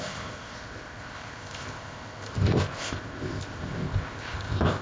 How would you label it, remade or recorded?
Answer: remade